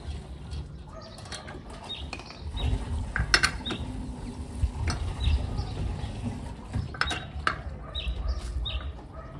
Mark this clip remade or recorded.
recorded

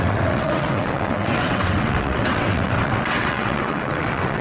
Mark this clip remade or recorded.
remade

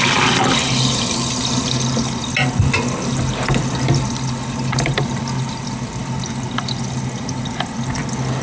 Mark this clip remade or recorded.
recorded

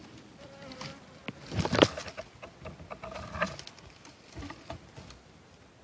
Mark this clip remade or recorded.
recorded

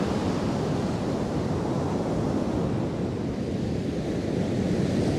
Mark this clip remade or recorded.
recorded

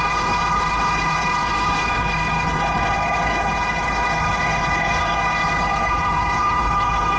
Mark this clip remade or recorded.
remade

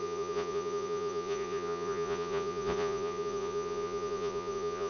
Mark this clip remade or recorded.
remade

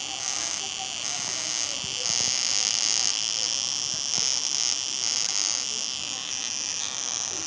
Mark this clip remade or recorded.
recorded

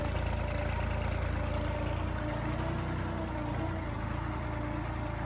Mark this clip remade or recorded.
recorded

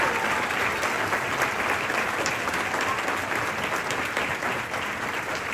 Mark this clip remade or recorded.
recorded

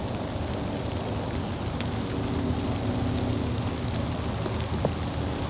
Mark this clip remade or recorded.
recorded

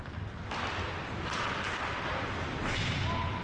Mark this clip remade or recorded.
recorded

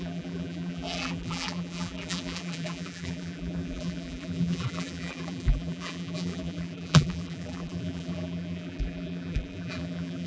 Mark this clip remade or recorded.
remade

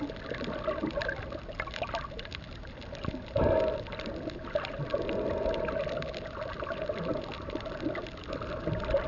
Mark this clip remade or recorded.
recorded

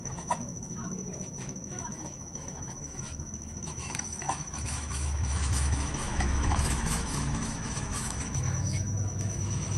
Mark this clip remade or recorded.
remade